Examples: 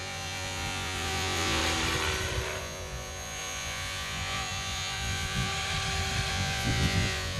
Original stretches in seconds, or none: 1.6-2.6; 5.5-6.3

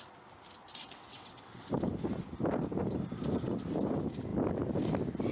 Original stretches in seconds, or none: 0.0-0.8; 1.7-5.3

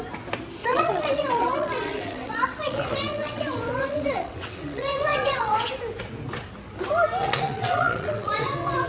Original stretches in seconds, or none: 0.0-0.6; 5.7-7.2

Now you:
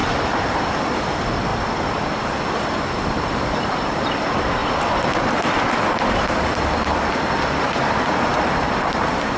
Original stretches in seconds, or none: 4.6-7.1

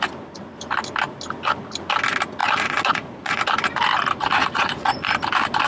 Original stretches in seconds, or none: 0.0-2.4; 3.4-4.4; 5.1-5.7

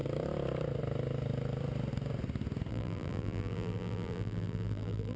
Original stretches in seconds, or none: 0.0-2.7

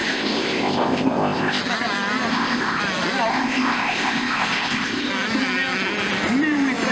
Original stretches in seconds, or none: 1.6-2.3; 2.8-3.3; 5.1-6.9